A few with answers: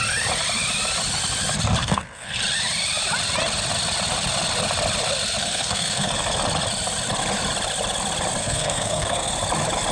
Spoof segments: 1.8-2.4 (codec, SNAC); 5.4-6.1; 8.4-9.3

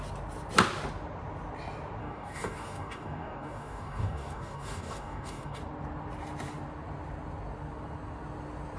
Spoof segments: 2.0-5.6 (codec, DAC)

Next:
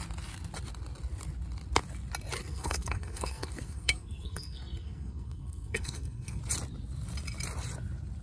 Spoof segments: 2.4-6.4 (codec, SNAC)

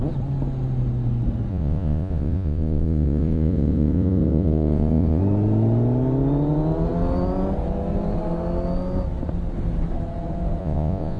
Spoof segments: 1.5-5.2 (vocoder, Vocos); 10.6-11.2